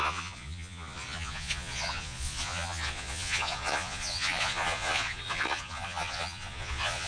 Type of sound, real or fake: fake